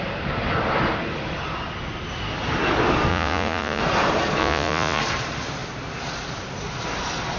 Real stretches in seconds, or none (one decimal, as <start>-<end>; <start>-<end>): 0.0-3.1; 3.8-4.4; 5.0-7.4